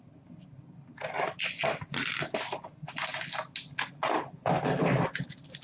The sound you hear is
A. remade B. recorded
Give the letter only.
B